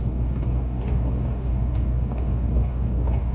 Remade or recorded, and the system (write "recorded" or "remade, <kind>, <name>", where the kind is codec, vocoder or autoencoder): remade, codec, DAC